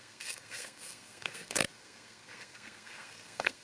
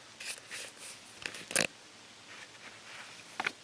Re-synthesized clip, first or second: first